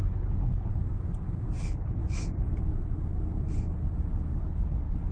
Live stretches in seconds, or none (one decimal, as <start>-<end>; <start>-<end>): 0.7-1.6; 2.0-4.4